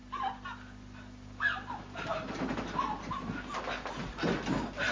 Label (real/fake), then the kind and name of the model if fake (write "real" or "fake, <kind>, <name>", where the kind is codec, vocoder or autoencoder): real